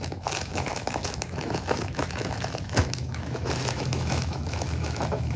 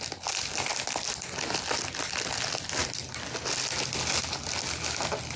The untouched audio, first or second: second